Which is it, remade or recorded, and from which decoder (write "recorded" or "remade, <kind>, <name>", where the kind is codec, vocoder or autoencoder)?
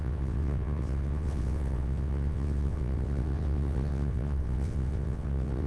remade, vocoder, WaveNeXt